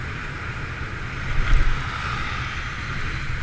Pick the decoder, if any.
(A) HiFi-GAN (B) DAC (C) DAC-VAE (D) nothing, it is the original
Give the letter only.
D